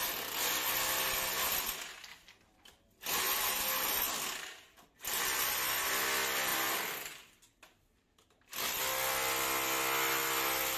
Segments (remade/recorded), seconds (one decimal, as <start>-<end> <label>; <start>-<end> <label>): 0.0-2.1 recorded; 2.1-3.1 remade; 3.1-6.5 recorded; 6.5-8.8 remade; 8.8-10.8 recorded